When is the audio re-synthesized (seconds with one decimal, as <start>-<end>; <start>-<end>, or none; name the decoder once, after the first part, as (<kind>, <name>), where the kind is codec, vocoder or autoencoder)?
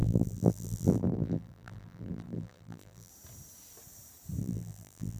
0.0-3.1 (vocoder, BigVGAN v2); 4.4-5.2